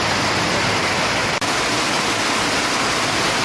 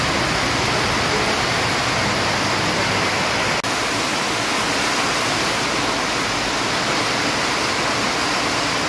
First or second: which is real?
second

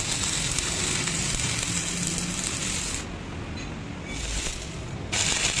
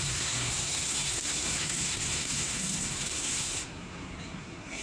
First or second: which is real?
first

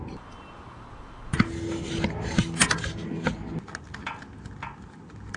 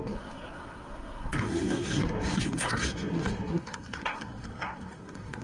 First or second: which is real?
first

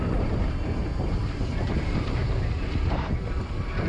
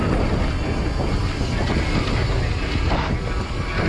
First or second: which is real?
second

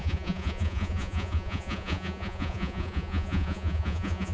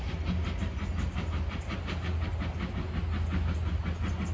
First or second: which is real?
second